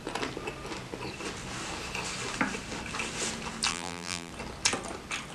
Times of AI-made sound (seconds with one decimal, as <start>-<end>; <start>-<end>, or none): 3.7-4.3